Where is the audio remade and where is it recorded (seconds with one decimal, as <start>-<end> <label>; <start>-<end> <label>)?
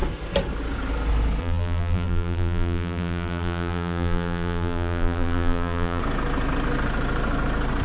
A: 0.0-1.4 recorded; 1.4-6.0 remade; 6.0-7.8 recorded